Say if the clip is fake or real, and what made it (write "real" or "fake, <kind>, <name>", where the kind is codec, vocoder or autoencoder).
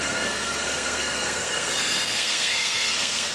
fake, codec, SNAC